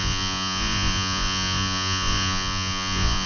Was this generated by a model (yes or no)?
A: yes